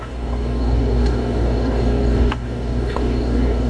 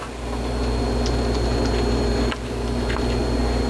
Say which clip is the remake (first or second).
first